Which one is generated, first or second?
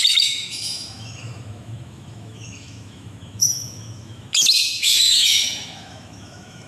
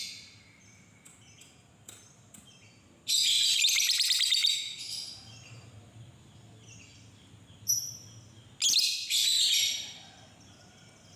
first